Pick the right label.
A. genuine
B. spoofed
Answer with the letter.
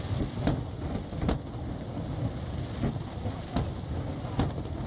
A